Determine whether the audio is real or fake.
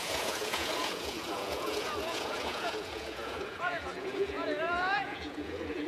fake